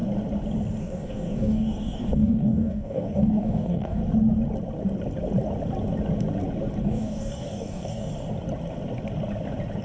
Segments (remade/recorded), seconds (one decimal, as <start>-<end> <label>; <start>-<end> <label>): 0.0-0.8 recorded; 0.8-4.0 remade; 4.0-6.8 recorded; 6.8-8.1 remade; 8.1-9.8 recorded